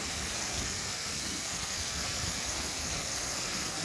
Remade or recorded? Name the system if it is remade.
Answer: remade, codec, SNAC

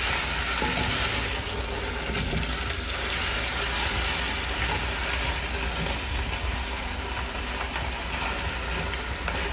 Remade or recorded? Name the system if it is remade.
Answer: recorded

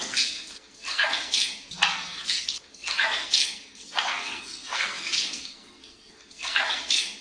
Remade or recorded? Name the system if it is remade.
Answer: remade, codec, SNAC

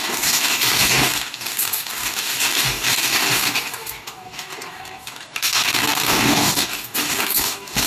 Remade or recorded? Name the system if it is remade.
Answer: remade, codec, DAC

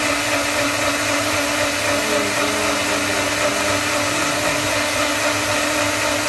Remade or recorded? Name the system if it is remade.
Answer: recorded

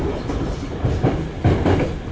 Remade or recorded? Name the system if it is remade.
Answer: recorded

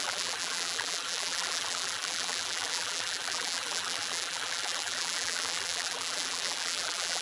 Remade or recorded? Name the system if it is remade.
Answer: remade, vocoder, BigVGAN v2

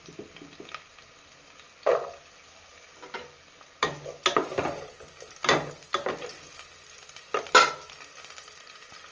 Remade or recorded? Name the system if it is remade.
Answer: recorded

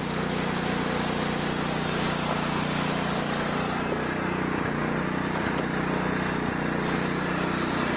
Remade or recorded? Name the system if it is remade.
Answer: recorded